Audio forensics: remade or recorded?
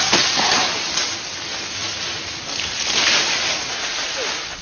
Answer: recorded